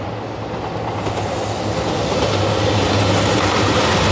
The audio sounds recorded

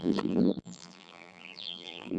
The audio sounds remade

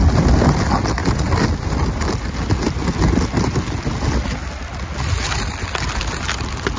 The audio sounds recorded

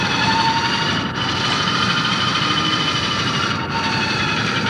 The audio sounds remade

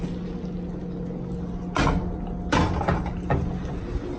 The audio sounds recorded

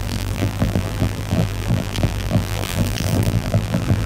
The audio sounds remade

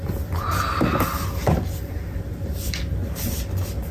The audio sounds recorded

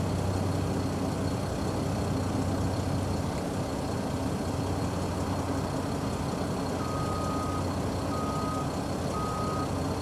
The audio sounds recorded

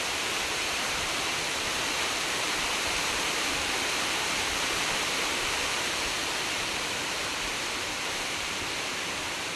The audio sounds remade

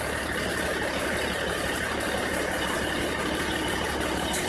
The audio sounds remade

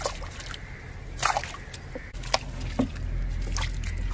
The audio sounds recorded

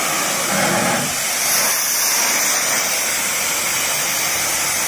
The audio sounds recorded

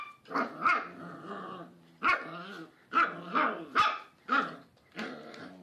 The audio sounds recorded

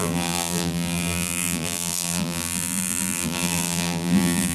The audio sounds remade